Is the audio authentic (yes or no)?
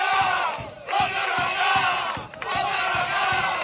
yes